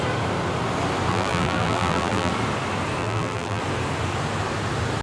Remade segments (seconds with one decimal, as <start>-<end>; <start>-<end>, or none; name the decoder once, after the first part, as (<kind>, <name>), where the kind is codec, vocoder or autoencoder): 1.1-2.3 (vocoder, BigVGAN v2); 3.0-3.6

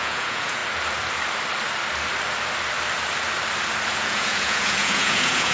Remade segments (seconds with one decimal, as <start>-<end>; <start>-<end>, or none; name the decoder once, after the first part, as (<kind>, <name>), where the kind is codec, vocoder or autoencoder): 0.0-0.6 (vocoder, Vocos); 3.9-5.5

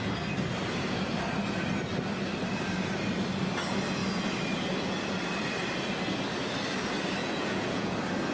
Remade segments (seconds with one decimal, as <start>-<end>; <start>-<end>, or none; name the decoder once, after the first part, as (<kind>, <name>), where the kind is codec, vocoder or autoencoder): 7.2-7.9 (vocoder, Vocos)

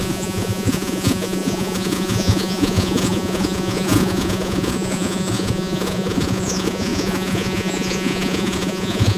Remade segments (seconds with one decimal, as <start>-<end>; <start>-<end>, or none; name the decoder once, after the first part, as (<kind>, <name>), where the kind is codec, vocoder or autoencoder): 0.0-9.2 (vocoder, Vocos)

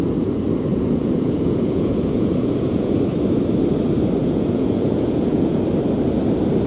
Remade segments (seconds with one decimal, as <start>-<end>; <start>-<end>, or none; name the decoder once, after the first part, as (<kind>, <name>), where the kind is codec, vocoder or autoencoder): 0.7-3.0 (vocoder, Vocos); 4.2-5.6